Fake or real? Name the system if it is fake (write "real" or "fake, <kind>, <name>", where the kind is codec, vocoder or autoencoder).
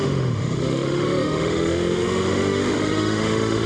fake, autoencoder, DAC-VAE